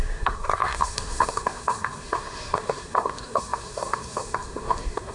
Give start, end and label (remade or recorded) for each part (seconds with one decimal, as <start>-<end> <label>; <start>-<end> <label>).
0.0-5.1 remade